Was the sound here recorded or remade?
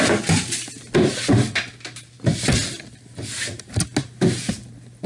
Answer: recorded